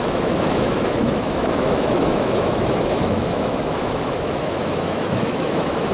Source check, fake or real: fake